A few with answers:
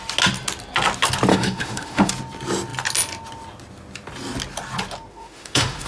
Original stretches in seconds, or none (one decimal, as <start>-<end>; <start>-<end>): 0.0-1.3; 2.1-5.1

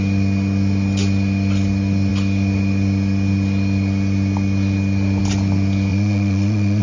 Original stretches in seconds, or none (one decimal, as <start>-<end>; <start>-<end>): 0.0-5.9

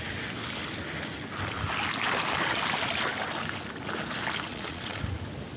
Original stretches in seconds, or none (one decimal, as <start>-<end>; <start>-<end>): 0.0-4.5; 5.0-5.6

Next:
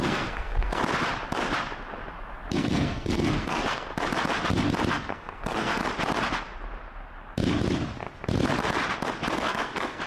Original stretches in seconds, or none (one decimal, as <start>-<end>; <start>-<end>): 0.8-2.5; 3.9-4.9; 5.8-9.3

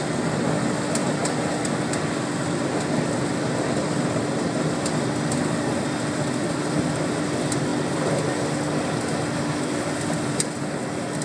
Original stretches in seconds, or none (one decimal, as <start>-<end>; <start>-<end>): 0.0-11.2